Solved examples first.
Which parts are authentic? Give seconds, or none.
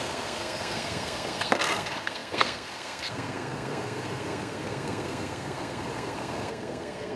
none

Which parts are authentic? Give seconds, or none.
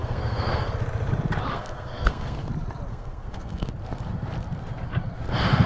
0.7-1.5; 2.5-2.9; 3.7-5.7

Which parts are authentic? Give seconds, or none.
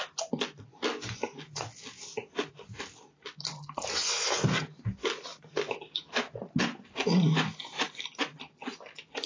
0.0-9.3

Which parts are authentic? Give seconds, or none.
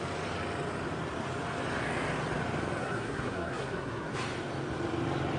0.0-2.8; 4.1-5.4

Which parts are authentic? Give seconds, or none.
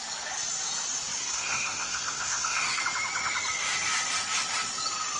0.0-1.2; 2.8-5.2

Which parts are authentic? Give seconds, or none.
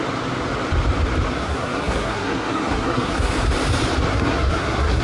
0.0-1.3; 3.3-4.1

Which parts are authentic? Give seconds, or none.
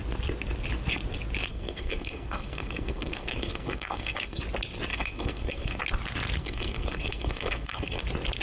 0.0-1.5; 4.4-4.9; 5.8-6.4; 8.0-8.4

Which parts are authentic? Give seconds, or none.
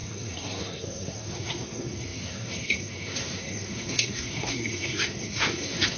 none